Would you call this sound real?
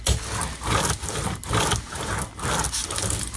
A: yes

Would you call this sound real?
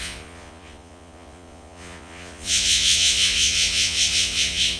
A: no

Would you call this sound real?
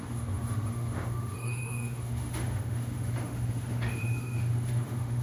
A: no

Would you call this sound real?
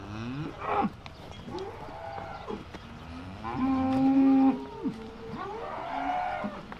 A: yes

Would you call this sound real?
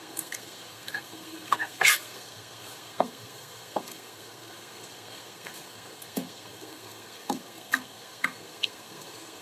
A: no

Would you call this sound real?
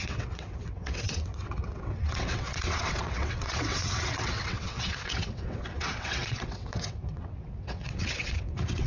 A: no